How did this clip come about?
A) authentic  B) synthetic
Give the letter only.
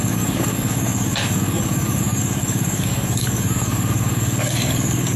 B